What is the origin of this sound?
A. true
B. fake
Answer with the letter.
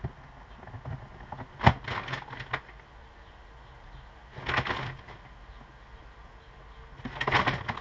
A